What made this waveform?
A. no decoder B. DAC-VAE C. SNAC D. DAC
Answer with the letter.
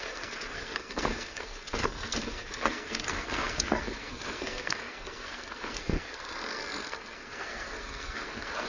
C